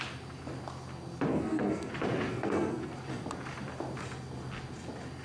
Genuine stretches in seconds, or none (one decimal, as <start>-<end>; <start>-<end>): 0.0-1.3; 1.9-2.3; 2.9-5.2